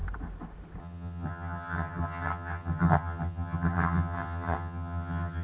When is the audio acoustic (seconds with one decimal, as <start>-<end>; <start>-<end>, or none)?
0.0-0.8

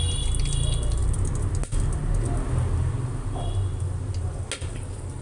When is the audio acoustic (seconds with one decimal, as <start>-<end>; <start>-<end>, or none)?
0.0-5.2

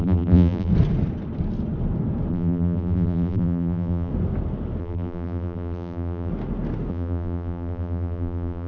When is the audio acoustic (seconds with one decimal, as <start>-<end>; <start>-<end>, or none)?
0.7-2.3; 4.1-4.8; 6.3-6.9

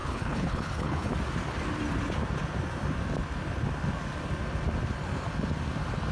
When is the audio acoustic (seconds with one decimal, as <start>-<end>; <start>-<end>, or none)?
1.1-6.1